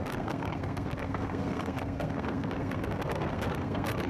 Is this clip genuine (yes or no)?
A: no